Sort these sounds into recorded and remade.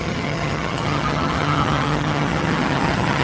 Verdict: remade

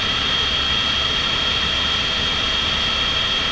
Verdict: recorded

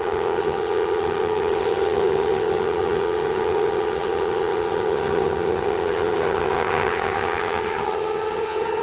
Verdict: remade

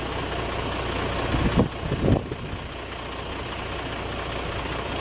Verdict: recorded